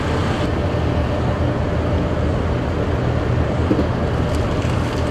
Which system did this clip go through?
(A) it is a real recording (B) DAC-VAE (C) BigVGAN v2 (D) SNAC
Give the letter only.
A